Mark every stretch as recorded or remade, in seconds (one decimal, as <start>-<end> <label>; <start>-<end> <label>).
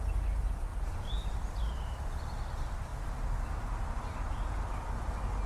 0.0-0.7 recorded; 0.7-1.6 remade; 1.6-5.5 recorded